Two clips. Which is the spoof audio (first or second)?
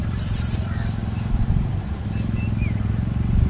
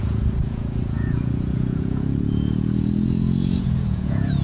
second